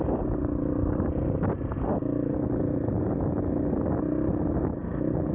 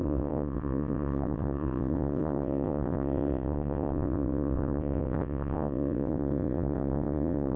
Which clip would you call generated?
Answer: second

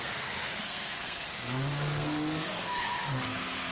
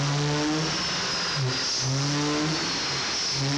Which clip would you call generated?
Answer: first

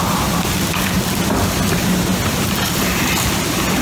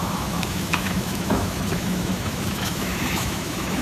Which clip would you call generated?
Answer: second